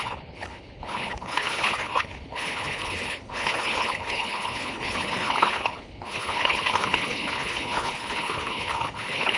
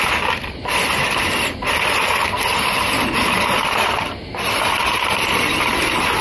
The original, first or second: second